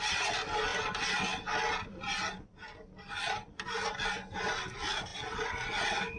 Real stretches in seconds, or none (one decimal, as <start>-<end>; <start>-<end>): 0.0-6.2